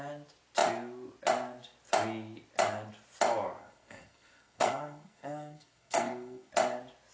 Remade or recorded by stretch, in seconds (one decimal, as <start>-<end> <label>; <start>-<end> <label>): 0.0-3.6 recorded; 3.6-6.5 remade; 6.5-7.1 recorded